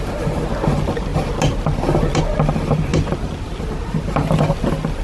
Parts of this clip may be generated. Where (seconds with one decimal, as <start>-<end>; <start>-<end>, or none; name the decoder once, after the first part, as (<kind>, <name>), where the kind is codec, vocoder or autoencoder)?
none